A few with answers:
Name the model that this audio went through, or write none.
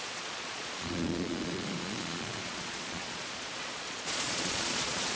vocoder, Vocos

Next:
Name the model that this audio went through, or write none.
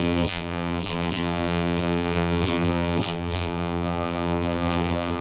vocoder, BigVGAN v2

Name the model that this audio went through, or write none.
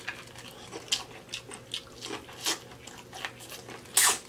none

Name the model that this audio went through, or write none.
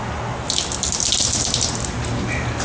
none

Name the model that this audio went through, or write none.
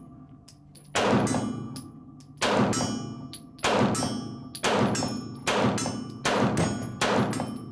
none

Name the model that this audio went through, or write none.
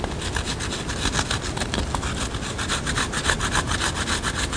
none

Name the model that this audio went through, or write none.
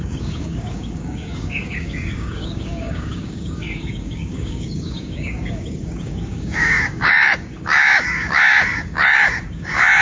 codec, DAC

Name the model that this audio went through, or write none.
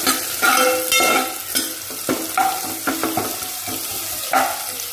none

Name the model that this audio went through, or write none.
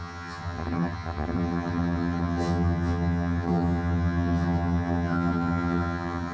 vocoder, HiFi-GAN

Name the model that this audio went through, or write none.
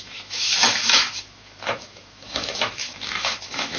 autoencoder, DAC-VAE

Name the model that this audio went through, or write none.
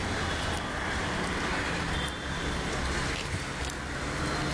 none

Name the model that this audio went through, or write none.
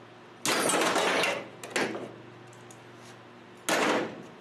none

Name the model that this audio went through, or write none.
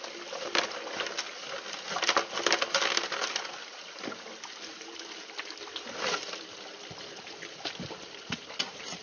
none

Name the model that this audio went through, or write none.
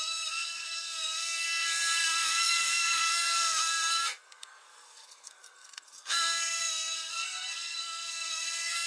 codec, SNAC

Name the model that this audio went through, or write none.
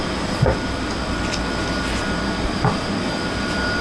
none